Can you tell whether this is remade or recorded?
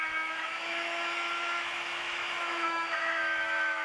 remade